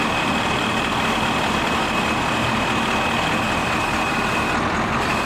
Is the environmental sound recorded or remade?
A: recorded